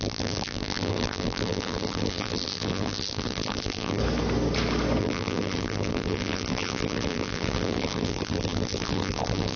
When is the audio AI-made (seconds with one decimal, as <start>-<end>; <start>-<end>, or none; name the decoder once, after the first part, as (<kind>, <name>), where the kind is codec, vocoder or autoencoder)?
0.0-4.0 (vocoder, BigVGAN v2); 5.0-9.6